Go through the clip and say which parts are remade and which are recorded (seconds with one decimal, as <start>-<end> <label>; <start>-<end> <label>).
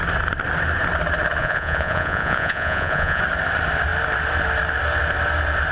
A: 0.0-1.4 recorded; 1.4-3.2 remade; 3.2-5.7 recorded